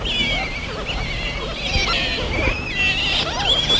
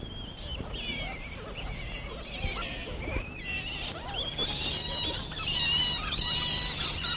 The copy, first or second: second